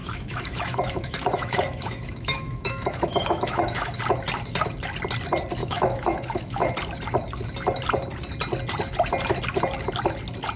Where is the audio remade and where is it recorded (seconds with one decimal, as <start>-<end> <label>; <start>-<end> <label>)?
0.0-4.0 remade; 4.0-5.6 recorded; 5.6-6.7 remade; 6.7-10.6 recorded